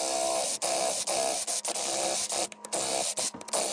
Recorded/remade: recorded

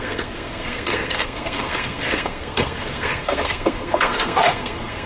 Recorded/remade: remade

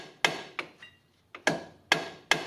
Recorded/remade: recorded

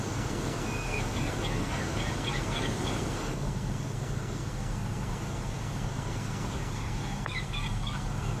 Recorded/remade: remade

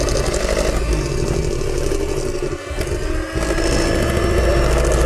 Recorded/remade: recorded